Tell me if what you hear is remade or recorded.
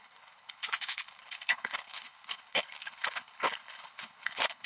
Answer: remade